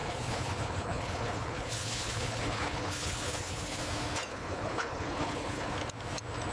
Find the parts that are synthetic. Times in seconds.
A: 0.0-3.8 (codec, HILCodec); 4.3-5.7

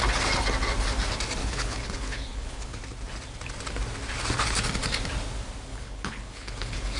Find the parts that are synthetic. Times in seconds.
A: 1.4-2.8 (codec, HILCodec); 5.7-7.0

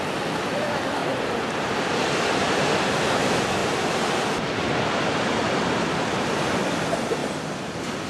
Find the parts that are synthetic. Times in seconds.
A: none

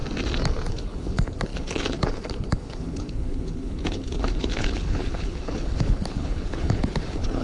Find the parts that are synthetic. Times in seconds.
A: 0.7-7.4 (codec, HILCodec)

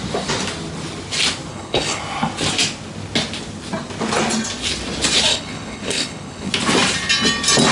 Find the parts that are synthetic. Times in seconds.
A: 1.5-2.0 (codec, HILCodec); 5.3-6.5

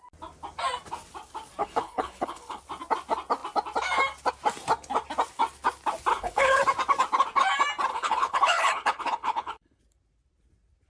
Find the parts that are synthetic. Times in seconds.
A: 1.6-2.6 (codec, HILCodec); 6.1-6.6; 7.9-9.8

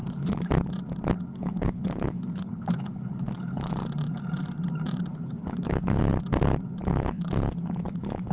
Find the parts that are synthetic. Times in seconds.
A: 0.0-0.5 (codec, HILCodec); 1.3-3.7; 5.1-6.0; 6.8-8.3